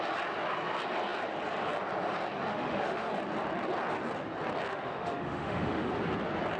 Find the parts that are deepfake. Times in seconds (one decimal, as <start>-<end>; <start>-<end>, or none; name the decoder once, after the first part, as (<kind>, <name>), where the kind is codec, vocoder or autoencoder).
2.5-3.1 (autoencoder, DAC-VAE); 4.7-5.9